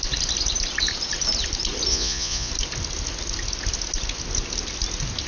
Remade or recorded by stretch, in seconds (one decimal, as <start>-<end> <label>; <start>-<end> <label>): 0.0-1.9 recorded; 1.9-2.5 remade; 2.5-5.3 recorded